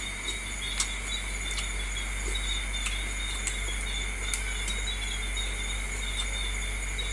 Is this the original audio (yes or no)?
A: yes